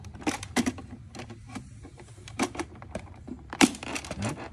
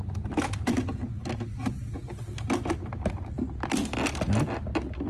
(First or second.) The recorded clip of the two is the second